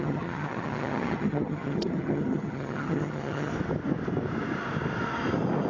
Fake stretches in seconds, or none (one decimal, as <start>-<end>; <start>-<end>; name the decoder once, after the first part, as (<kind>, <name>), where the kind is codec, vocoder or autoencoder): 0.0-3.5 (vocoder, HiFi-GAN)